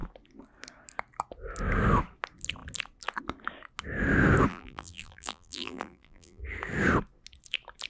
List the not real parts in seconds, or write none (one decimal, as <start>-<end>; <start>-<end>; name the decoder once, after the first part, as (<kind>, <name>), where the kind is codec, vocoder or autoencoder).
4.5-6.4 (vocoder, BigVGAN v2)